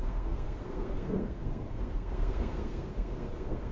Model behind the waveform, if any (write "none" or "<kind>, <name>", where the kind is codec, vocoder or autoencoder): codec, SNAC